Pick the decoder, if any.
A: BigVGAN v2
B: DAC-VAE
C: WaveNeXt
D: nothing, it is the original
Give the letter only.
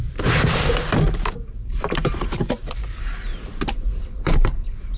A